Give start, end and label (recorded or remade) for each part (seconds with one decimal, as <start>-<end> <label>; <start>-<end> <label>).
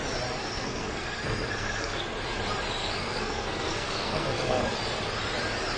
0.0-0.4 recorded; 0.4-2.0 remade; 2.0-2.8 recorded; 2.8-4.7 remade; 4.7-5.8 recorded